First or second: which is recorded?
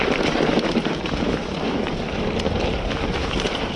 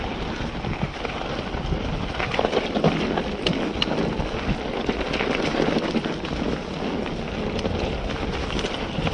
second